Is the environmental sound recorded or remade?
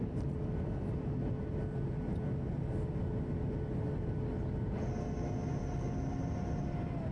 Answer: recorded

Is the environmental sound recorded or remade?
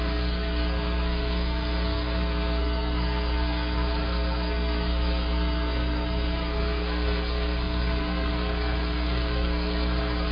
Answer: remade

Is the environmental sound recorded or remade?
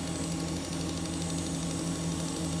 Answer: recorded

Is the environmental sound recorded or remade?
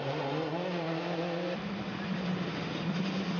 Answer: recorded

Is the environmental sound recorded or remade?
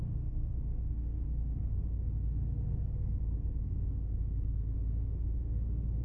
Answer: remade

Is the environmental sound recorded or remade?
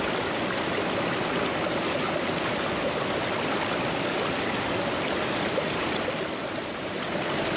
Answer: recorded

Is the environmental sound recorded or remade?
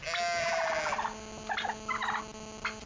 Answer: recorded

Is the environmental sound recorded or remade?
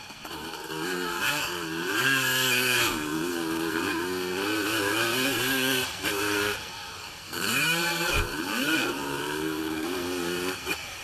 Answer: remade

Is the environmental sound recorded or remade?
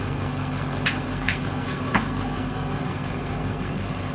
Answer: remade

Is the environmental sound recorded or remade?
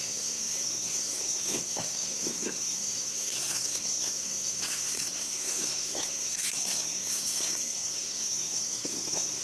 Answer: remade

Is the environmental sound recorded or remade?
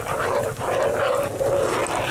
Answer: recorded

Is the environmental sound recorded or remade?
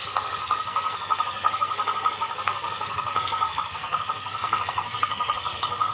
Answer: remade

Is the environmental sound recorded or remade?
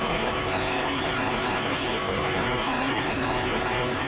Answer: remade